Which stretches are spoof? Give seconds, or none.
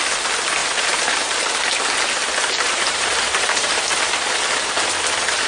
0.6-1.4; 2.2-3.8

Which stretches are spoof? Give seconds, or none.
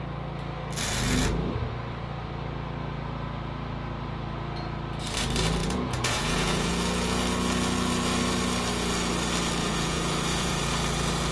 5.6-6.7; 9.6-10.6